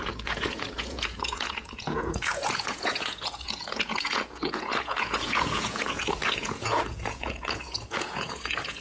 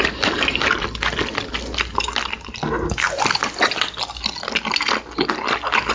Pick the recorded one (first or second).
second